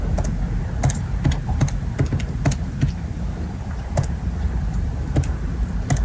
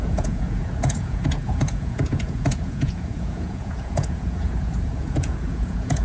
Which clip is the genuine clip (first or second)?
first